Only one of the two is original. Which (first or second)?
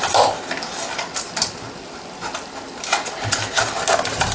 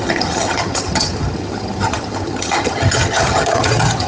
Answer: first